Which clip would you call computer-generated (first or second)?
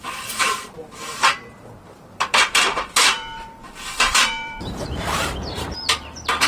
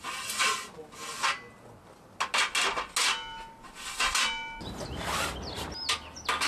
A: first